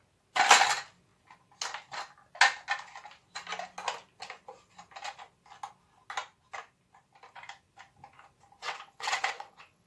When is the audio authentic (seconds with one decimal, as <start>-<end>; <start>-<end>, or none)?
0.0-8.6